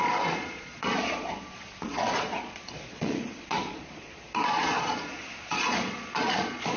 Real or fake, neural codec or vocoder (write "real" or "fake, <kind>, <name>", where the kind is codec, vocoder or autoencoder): fake, vocoder, Vocos